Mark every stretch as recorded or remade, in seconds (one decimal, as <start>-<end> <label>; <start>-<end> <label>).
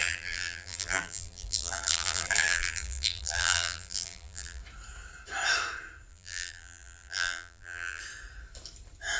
0.0-4.6 remade; 4.6-6.1 recorded; 6.1-8.0 remade; 8.0-9.2 recorded